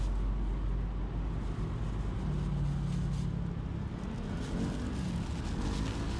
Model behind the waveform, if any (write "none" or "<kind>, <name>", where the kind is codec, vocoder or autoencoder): none